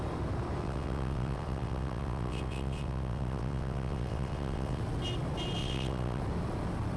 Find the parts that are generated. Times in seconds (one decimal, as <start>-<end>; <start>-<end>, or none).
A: 0.6-4.8; 5.6-6.2